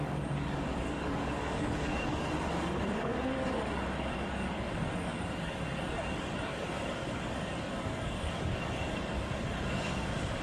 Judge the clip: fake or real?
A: fake